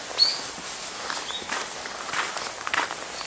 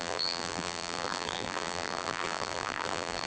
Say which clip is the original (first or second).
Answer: first